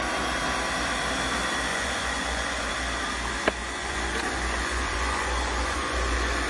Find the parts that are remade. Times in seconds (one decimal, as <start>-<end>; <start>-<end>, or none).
1.7-2.7; 3.6-6.5

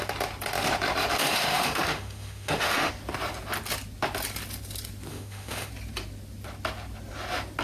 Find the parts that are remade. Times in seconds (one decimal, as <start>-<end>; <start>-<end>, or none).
1.2-2.9; 5.1-5.7